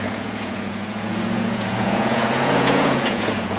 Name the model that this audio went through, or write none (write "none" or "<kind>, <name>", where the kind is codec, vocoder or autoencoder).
vocoder, Vocos